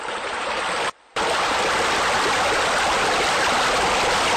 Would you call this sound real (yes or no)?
yes